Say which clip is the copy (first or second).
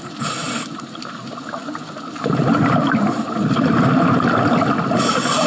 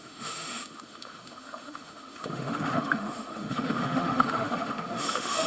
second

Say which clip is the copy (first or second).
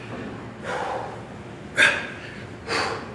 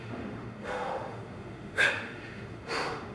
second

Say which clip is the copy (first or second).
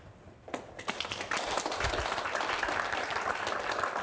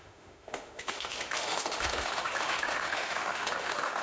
second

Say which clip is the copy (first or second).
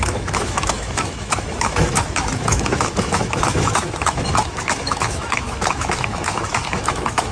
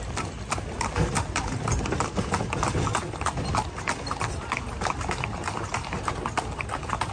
first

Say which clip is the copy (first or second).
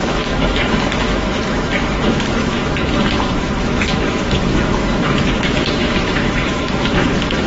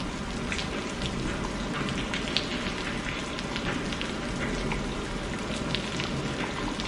first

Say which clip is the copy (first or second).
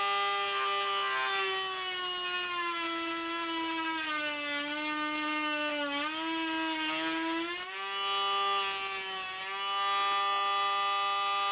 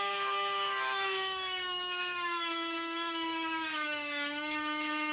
second